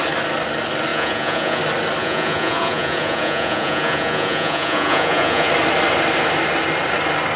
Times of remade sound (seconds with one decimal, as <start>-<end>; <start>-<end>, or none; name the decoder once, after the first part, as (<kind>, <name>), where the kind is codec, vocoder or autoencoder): 0.9-1.6 (vocoder, Vocos); 2.0-5.5